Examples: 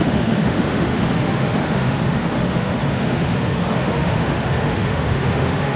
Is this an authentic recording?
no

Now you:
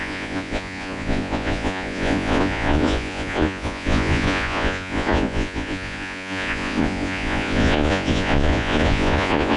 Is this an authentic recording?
no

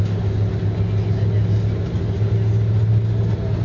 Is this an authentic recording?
yes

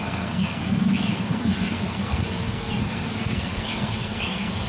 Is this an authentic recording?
no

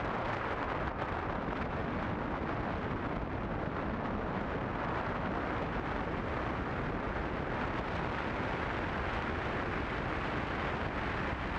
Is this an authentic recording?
yes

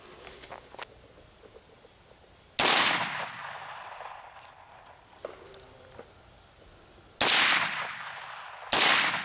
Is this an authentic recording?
yes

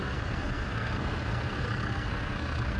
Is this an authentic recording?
no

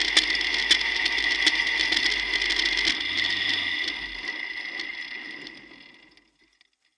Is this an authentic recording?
yes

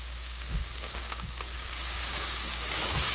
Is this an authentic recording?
no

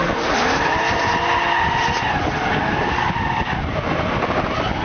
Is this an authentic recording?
yes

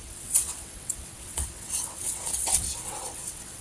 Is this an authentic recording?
no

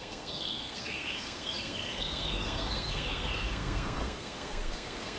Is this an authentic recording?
no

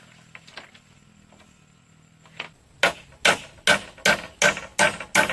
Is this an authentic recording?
yes